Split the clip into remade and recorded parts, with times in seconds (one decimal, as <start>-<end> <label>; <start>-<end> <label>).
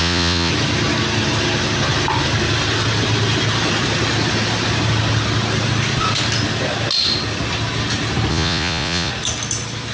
0.0-0.5 remade; 0.5-8.3 recorded; 8.3-9.1 remade; 9.1-9.9 recorded